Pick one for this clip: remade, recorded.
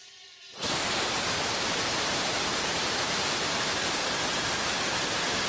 remade